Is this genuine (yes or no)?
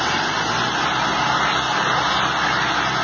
yes